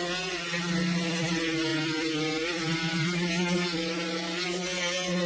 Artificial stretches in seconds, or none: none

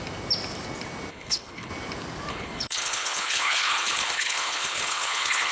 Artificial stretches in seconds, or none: 1.1-1.7 (codec, HILCodec); 2.3-5.5

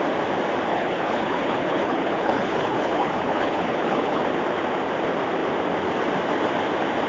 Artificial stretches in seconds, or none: 0.7-4.2 (codec, HILCodec)

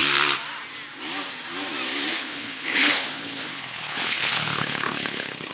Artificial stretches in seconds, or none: 2.1-5.5 (codec, HILCodec)